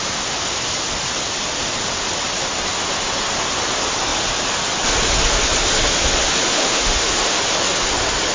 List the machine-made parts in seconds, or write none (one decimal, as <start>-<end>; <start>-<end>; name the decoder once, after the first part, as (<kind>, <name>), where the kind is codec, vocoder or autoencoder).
6.5-7.4 (autoencoder, DAC-VAE)